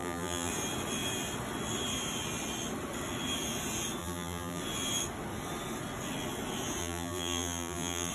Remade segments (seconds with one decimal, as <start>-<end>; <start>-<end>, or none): 0.0-0.5; 4.0-4.6; 6.8-8.1